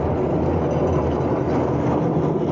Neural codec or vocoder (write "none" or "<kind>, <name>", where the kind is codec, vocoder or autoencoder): none